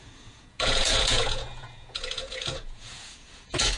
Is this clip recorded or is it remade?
remade